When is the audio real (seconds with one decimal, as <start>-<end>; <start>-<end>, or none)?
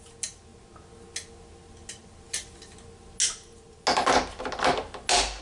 0.0-5.4